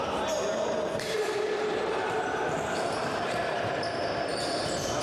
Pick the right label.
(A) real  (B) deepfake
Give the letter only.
B